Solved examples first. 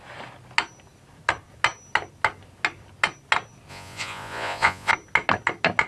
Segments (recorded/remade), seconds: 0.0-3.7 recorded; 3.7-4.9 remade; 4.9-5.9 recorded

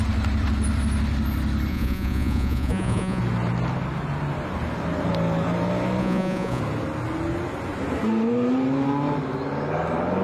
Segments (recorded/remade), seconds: 0.0-1.7 recorded; 1.7-3.2 remade; 3.2-6.0 recorded; 6.0-6.6 remade; 6.6-10.2 recorded

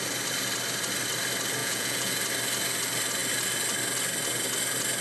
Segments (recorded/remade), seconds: 0.0-1.6 recorded; 1.6-2.1 remade; 2.1-5.0 recorded

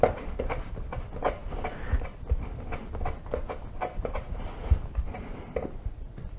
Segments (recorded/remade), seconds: 0.0-6.4 recorded

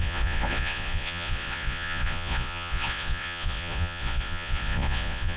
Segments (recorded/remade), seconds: 0.0-5.4 remade

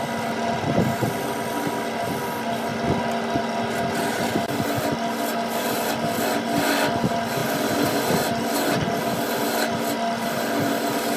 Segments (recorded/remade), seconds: 0.0-11.2 recorded